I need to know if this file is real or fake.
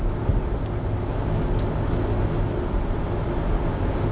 real